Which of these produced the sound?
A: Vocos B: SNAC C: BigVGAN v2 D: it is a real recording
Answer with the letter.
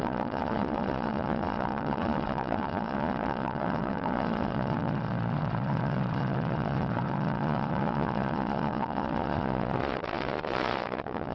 A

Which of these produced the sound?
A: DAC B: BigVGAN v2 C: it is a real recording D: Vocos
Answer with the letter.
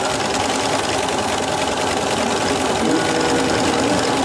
C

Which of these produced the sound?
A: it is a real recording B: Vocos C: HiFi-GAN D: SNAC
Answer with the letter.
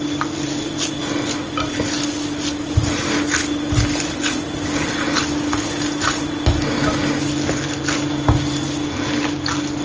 A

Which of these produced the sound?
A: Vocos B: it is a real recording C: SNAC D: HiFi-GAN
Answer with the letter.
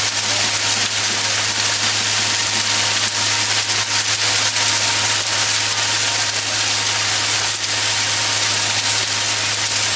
B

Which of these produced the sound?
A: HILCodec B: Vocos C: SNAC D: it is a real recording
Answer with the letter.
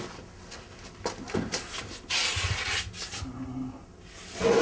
D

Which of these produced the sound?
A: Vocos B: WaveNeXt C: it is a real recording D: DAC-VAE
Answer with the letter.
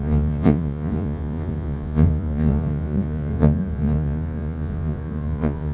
A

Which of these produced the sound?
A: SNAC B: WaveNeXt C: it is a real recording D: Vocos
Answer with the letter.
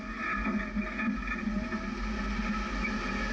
C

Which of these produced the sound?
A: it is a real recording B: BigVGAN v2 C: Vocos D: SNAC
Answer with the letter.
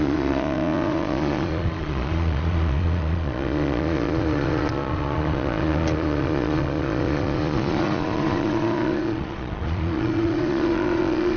C